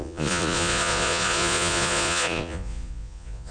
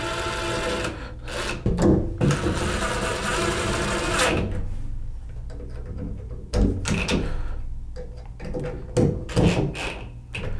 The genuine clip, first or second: second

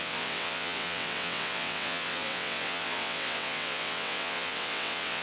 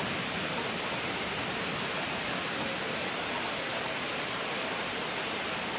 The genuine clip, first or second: second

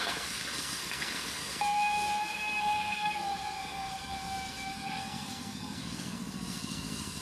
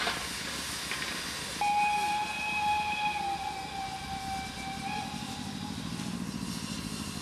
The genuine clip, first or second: second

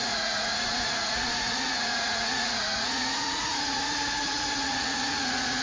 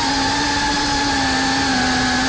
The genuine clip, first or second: second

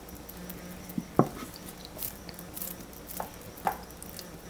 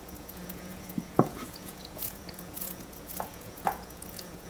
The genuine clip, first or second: first